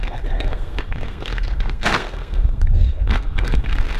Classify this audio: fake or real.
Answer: fake